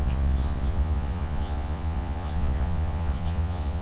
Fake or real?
fake